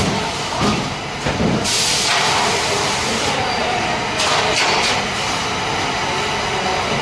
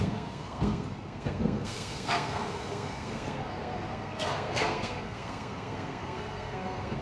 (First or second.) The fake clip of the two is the second